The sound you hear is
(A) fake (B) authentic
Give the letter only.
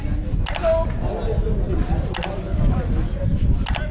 B